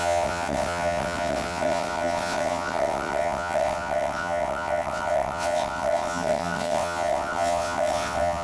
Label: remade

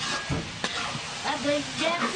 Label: recorded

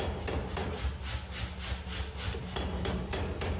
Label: recorded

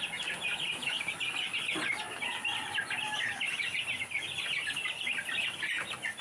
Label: recorded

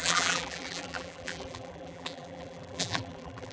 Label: remade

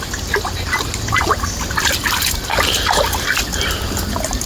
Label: recorded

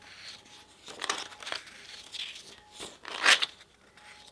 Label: remade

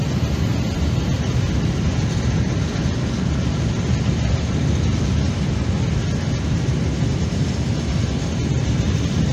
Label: recorded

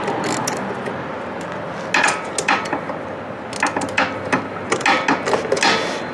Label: recorded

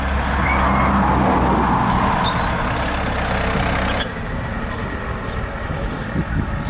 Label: recorded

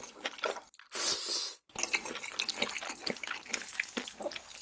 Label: recorded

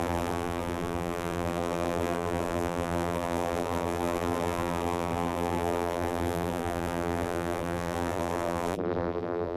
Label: remade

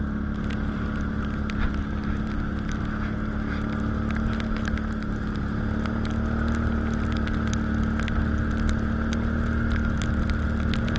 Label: recorded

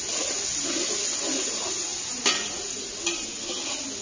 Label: recorded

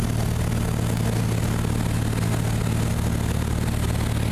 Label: recorded